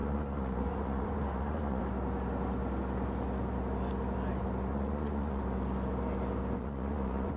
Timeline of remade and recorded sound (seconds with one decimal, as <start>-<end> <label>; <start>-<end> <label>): 0.0-1.8 remade; 1.8-4.7 recorded; 4.7-5.4 remade; 5.4-6.6 recorded; 6.6-7.4 remade